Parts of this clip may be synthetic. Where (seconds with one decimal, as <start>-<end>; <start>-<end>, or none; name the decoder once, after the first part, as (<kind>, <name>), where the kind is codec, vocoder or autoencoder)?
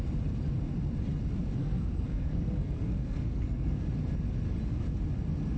1.6-3.8 (codec, SNAC)